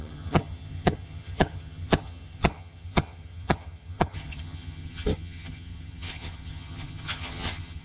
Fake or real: fake